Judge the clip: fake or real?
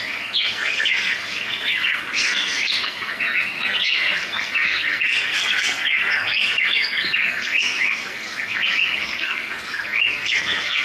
fake